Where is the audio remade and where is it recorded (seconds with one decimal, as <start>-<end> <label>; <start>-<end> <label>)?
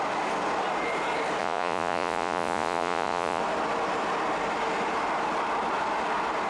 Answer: 0.0-1.4 recorded; 1.4-3.4 remade; 3.4-6.5 recorded